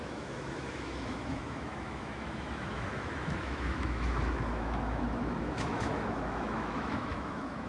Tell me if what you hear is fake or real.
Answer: fake